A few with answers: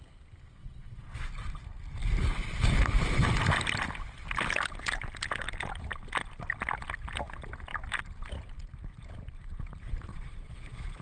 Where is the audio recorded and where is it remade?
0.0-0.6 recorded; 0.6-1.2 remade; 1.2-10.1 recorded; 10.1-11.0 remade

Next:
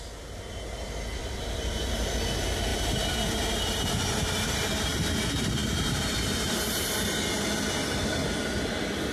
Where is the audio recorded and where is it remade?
0.0-1.2 recorded; 1.2-2.1 remade; 2.1-2.7 recorded; 2.7-5.0 remade; 5.0-5.6 recorded; 5.6-6.9 remade; 6.9-9.1 recorded

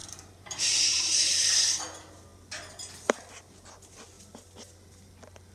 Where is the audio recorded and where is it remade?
0.0-1.8 remade; 1.8-5.5 recorded

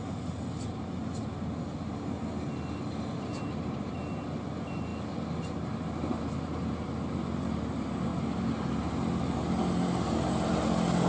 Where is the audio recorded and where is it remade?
0.0-11.1 recorded